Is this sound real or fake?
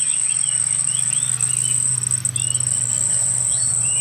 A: real